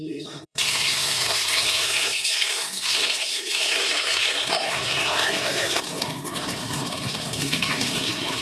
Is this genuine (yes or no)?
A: no